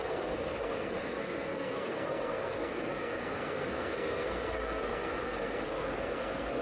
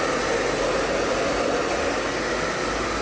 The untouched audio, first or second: second